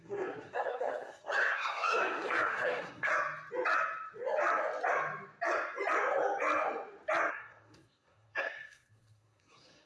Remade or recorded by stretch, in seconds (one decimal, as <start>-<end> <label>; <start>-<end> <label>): 0.0-3.1 remade; 3.1-7.3 recorded; 7.3-9.9 remade